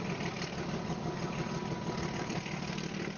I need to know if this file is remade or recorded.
recorded